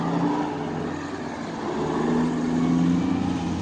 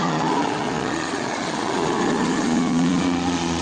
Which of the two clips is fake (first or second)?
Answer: second